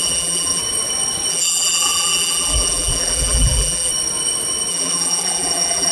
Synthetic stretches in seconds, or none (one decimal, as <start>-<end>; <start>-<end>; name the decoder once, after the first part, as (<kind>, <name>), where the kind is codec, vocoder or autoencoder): 0.0-0.6 (vocoder, BigVGAN v2); 1.3-3.9; 4.7-5.9